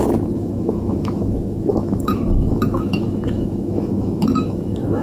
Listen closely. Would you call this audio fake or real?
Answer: fake